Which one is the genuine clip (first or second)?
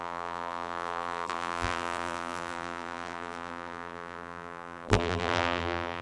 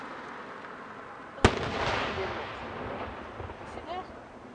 second